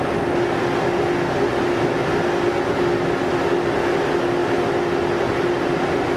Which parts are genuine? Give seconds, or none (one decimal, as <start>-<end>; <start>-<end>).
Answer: 0.0-6.2